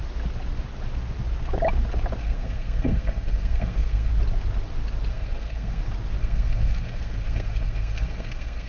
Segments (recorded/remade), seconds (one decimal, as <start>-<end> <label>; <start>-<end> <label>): 0.0-2.2 recorded; 2.2-4.1 remade; 4.1-5.1 recorded; 5.1-5.8 remade; 5.8-6.2 recorded; 6.2-8.7 remade